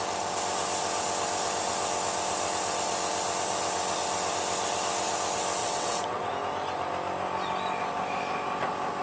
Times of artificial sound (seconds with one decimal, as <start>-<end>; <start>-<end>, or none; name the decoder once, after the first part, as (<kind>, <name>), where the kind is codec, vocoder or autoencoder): 5.6-6.3 (vocoder, WaveNeXt)